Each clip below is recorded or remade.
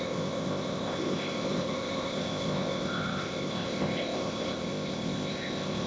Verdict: remade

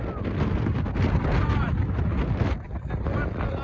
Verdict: recorded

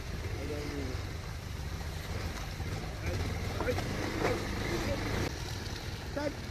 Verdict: recorded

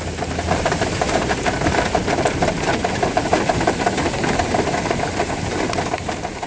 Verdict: remade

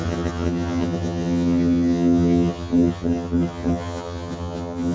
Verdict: remade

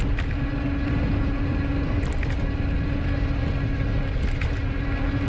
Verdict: recorded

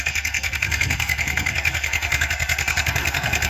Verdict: remade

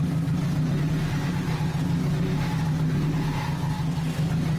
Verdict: recorded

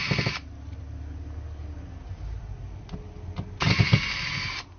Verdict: recorded